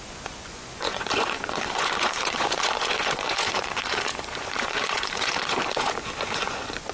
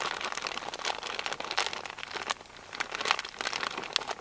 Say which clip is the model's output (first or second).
first